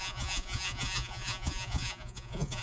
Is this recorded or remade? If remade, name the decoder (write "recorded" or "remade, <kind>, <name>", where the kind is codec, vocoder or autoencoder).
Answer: remade, vocoder, Vocos